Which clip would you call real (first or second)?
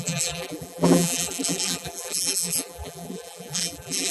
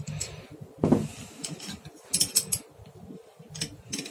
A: second